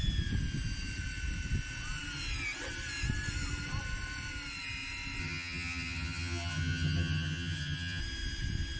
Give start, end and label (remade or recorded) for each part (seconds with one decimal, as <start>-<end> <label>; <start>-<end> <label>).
0.0-5.2 recorded; 5.2-8.0 remade; 8.0-8.8 recorded